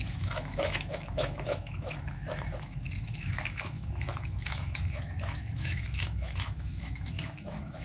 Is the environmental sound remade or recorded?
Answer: remade